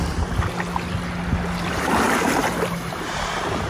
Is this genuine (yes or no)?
yes